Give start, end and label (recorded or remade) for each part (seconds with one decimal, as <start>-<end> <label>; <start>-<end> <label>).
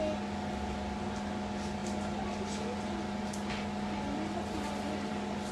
0.0-5.5 recorded